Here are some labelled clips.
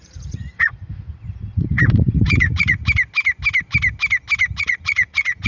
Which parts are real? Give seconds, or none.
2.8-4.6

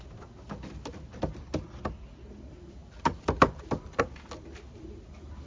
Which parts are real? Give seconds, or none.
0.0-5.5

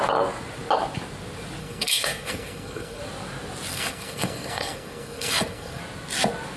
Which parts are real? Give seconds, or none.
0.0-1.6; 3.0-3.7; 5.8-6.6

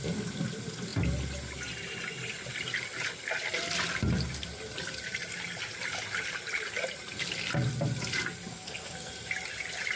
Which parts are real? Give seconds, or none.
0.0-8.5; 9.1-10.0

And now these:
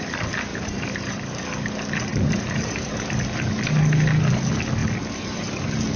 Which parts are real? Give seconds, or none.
0.0-0.5; 1.4-2.1; 2.9-6.0